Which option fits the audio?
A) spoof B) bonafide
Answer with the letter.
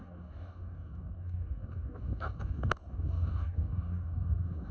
A